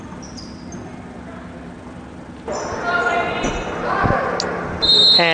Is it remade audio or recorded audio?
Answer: recorded